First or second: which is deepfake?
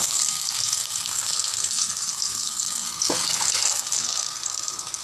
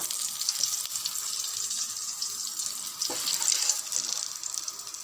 first